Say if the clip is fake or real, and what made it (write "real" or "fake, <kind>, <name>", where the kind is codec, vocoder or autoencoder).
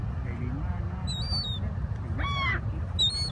real